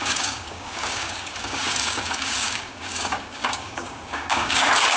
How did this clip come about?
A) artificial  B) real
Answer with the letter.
A